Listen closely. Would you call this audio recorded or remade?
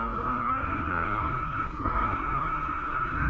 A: remade